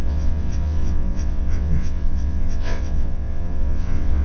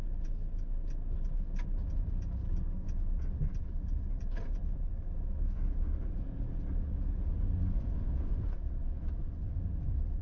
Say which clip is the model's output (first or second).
first